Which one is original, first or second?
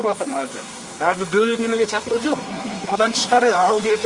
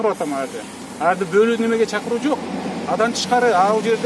second